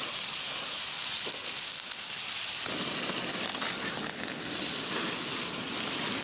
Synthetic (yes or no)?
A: no